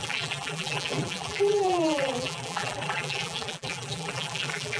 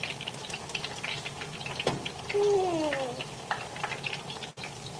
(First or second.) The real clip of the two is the second